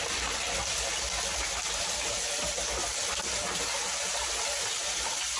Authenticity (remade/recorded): recorded